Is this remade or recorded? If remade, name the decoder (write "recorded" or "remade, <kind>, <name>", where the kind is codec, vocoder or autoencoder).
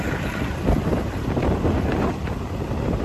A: remade, vocoder, BigVGAN v2